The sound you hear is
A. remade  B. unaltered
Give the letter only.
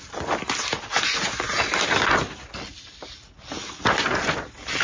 B